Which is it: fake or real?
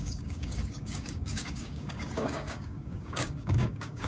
fake